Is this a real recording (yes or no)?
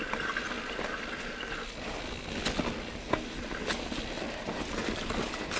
yes